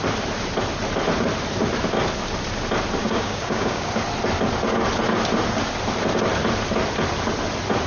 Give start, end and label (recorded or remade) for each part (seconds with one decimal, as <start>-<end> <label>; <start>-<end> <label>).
0.0-3.0 recorded; 3.0-3.9 remade; 3.9-7.9 recorded